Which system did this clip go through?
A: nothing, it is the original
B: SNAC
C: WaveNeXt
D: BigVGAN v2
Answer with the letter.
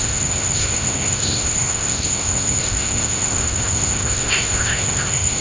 B